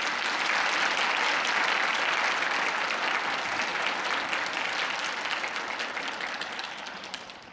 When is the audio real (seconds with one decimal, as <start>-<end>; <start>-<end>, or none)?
0.0-7.5